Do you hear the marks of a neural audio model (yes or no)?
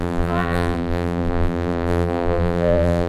yes